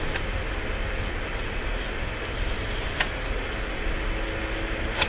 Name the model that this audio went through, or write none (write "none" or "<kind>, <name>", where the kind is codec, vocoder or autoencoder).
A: none